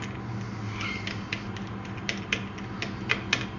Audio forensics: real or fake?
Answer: real